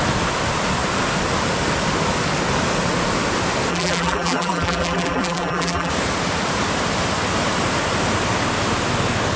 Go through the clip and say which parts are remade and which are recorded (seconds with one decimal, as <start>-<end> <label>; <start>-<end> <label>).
0.0-3.7 recorded; 3.7-5.9 remade; 5.9-9.4 recorded